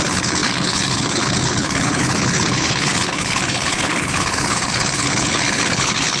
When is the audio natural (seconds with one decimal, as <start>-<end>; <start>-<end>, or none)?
none

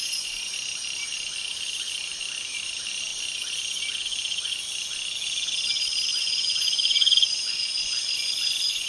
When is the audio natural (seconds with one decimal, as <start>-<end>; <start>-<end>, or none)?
0.5-6.1